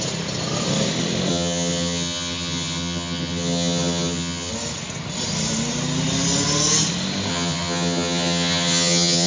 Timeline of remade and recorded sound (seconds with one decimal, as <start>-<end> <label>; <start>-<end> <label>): 0.0-1.3 recorded; 1.3-4.5 remade; 4.5-7.3 recorded; 7.3-9.3 remade